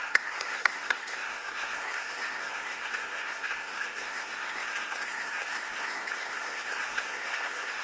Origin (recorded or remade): remade